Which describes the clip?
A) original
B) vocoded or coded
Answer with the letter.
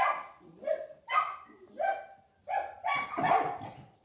A